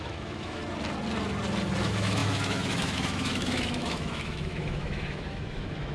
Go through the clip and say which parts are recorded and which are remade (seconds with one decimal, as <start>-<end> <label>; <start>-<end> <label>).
0.0-0.6 remade; 0.6-1.8 recorded; 1.8-5.9 remade